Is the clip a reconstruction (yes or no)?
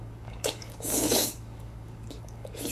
yes